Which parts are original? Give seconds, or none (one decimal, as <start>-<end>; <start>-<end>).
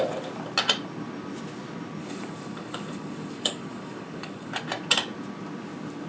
0.0-2.0; 4.6-6.1